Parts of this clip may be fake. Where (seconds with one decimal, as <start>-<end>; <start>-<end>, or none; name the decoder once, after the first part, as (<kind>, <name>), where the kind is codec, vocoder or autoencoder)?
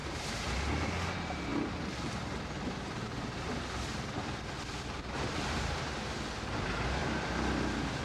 0.0-0.9 (vocoder, BigVGAN v2); 1.5-5.6; 7.0-8.0